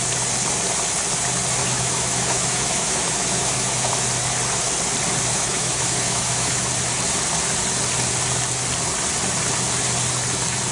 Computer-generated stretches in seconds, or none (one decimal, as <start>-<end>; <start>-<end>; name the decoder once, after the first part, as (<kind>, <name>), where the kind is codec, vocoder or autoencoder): 1.6-3.9 (autoencoder, DAC-VAE); 5.3-6.7